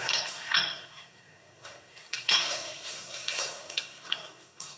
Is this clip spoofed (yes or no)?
yes